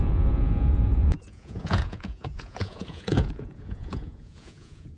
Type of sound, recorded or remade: remade